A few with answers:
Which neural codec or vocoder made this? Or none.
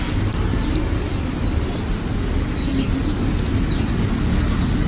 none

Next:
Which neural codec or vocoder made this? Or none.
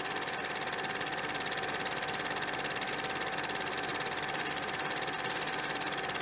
none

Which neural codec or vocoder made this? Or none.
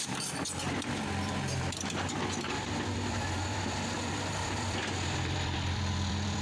vocoder, BigVGAN v2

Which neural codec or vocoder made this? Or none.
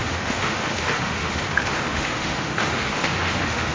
autoencoder, DAC-VAE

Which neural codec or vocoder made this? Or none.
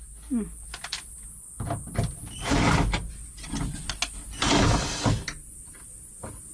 none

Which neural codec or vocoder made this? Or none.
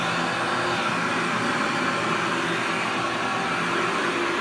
none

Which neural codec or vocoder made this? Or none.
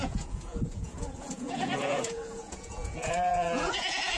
vocoder, Vocos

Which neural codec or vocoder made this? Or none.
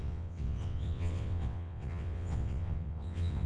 vocoder, WaveNeXt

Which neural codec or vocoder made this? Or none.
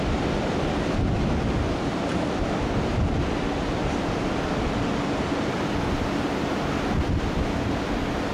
none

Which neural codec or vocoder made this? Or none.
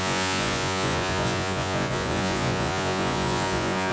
vocoder, Vocos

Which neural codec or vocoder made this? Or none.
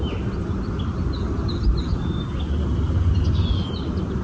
none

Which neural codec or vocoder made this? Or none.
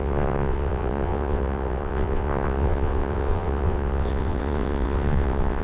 vocoder, WaveNeXt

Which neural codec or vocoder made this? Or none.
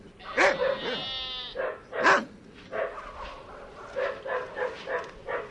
none